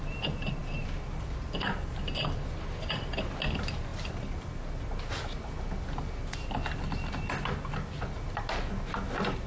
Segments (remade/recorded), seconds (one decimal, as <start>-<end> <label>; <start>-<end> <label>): 0.0-9.5 recorded

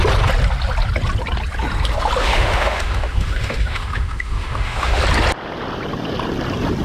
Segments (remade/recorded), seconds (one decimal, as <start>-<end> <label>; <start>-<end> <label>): 0.0-2.2 recorded; 2.2-5.0 remade; 5.0-6.8 recorded

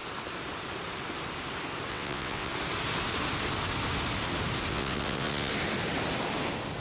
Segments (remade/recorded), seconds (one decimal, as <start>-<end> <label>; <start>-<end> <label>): 0.0-1.9 recorded; 1.9-2.5 remade; 2.5-4.7 recorded; 4.7-5.5 remade; 5.5-6.8 recorded

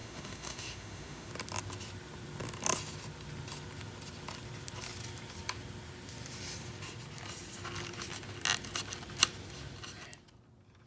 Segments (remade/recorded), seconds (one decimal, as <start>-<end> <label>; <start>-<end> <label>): 0.0-1.3 remade; 1.3-10.9 recorded